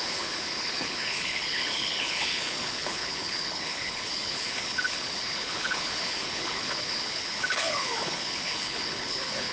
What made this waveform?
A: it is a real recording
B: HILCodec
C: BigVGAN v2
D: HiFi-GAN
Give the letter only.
B